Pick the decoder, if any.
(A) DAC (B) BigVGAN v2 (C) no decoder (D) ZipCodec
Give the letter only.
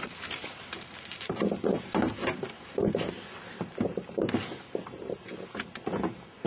C